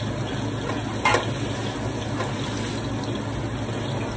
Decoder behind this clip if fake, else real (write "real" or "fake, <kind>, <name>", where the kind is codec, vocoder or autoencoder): real